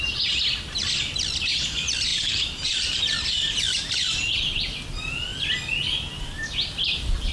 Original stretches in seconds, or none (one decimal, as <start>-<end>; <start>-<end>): 0.0-2.1; 3.0-7.3